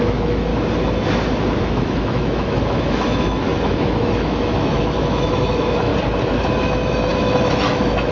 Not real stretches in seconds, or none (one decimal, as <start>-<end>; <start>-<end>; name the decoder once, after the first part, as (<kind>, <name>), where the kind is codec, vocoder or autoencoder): 0.0-0.5 (autoencoder, DAC-VAE); 1.6-5.9; 6.6-8.1